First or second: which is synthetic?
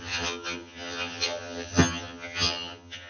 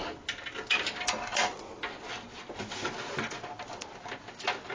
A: first